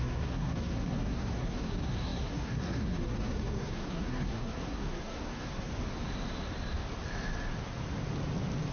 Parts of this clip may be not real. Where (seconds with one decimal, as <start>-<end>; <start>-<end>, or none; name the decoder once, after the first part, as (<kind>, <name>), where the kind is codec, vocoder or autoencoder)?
0.0-5.7 (codec, SNAC)